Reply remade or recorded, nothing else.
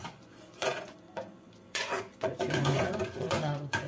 remade